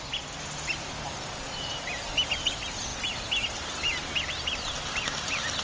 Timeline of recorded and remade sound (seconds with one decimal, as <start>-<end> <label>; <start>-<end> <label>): 0.0-5.6 recorded